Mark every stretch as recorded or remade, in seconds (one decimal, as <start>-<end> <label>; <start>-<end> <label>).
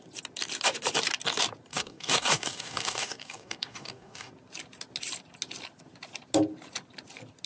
0.0-1.7 recorded; 1.7-4.3 remade; 4.3-7.5 recorded